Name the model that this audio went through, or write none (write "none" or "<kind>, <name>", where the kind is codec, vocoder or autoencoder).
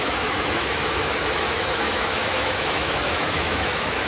autoencoder, DAC-VAE